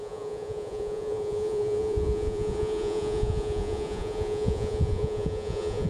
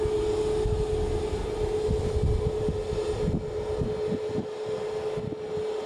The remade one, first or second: first